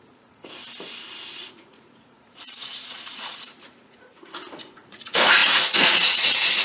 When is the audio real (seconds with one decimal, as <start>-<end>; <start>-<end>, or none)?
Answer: 0.6-1.5